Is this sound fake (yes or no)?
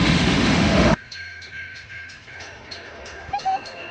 yes